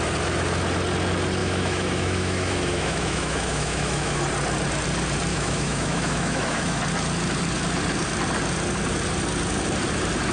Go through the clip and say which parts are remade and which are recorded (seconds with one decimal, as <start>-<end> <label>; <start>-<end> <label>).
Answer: 0.0-1.4 recorded; 1.4-4.2 remade; 4.2-5.3 recorded; 5.3-6.8 remade; 6.8-10.3 recorded